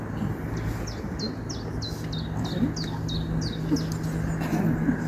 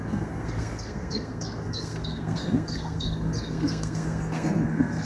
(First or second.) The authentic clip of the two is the first